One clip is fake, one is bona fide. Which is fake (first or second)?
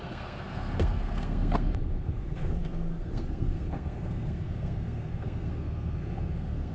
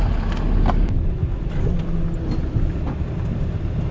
first